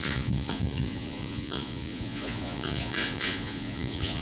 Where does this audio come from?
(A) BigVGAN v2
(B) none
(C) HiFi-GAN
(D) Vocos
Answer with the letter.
D